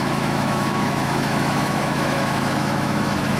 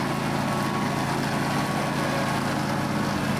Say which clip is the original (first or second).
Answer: second